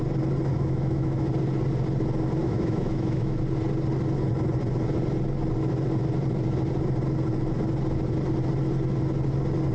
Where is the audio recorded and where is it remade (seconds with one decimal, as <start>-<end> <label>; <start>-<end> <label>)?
0.0-0.5 recorded; 0.5-1.3 remade; 1.3-2.4 recorded; 2.4-3.4 remade; 3.4-9.7 recorded